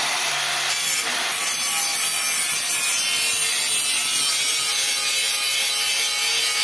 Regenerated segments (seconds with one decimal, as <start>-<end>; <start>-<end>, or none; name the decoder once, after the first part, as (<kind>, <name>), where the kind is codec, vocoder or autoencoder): none